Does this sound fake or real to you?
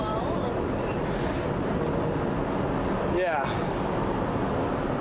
real